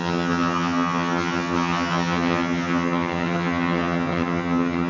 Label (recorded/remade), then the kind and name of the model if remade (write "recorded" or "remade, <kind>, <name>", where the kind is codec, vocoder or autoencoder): remade, vocoder, HiFi-GAN